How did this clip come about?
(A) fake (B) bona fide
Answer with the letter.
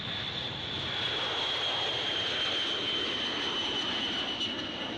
B